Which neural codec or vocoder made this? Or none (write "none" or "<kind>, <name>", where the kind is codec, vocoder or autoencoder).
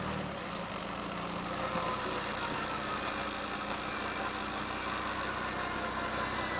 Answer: vocoder, BigVGAN v2